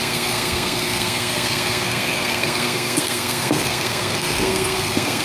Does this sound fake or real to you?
fake